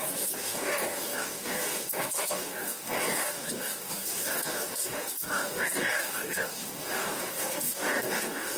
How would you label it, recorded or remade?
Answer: remade